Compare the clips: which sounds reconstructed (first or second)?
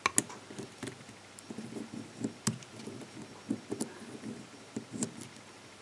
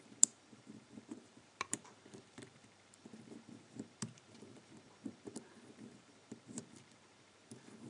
second